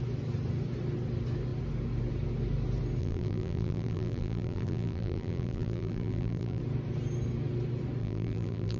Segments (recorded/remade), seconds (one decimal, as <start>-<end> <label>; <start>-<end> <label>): 0.0-3.0 recorded; 3.0-6.6 remade; 6.6-8.0 recorded; 8.0-8.8 remade